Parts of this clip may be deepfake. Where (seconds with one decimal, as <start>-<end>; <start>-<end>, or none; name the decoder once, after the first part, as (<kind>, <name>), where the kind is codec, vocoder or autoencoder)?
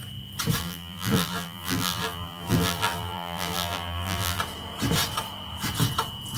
0.6-4.4 (vocoder, BigVGAN v2)